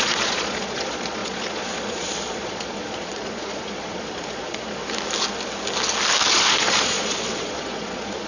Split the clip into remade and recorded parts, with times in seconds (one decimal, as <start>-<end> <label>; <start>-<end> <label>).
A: 0.0-4.8 remade; 4.8-6.3 recorded; 6.3-8.3 remade